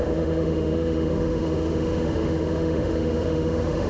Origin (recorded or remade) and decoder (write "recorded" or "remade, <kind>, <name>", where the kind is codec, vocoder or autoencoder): remade, autoencoder, DAC-VAE